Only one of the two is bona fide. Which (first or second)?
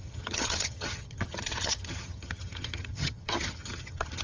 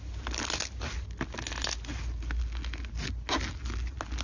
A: second